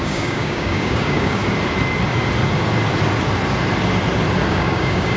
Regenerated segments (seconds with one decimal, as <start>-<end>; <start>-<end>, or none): 0.0-1.4; 4.5-5.2